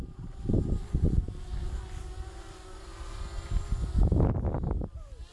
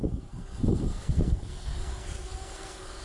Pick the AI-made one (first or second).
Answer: second